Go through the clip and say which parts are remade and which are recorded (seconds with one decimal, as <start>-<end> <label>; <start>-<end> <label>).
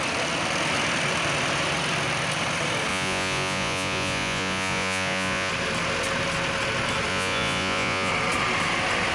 0.0-2.9 recorded; 2.9-5.5 remade; 5.5-7.1 recorded; 7.1-8.1 remade; 8.1-9.1 recorded